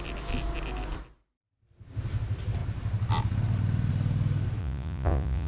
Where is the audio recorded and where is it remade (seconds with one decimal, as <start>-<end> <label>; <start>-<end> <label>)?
0.0-4.6 recorded; 4.6-5.5 remade